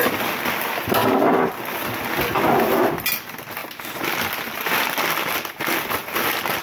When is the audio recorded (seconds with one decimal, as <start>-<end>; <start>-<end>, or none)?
0.0-6.6